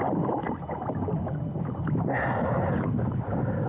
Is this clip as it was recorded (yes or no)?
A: yes